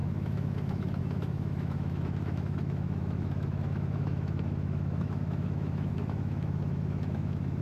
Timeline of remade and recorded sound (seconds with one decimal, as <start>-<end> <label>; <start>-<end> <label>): 0.0-7.6 remade